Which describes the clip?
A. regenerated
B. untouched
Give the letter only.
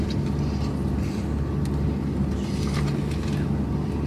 B